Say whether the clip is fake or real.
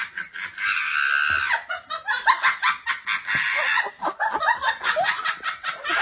real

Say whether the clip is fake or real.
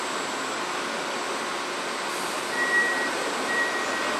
real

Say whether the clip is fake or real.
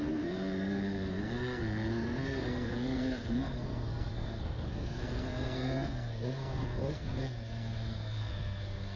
fake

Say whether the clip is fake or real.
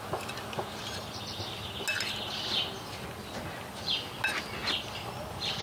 real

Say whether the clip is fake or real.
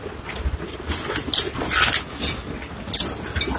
real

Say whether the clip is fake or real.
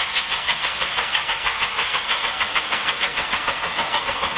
fake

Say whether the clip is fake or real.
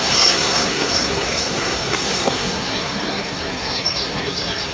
fake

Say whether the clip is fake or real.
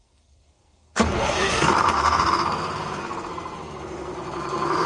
fake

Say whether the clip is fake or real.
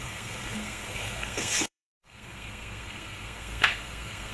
fake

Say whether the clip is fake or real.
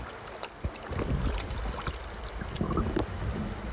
real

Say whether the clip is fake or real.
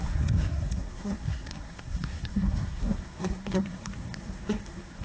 fake